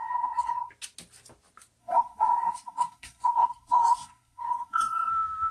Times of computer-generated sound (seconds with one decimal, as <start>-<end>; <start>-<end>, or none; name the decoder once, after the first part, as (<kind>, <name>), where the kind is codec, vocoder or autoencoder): 0.0-0.7 (codec, SNAC); 1.8-5.1